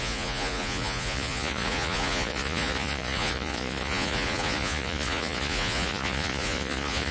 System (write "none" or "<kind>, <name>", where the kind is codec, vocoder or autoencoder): vocoder, Vocos